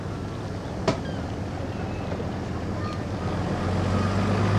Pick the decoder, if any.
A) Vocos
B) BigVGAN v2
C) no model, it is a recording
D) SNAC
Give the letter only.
C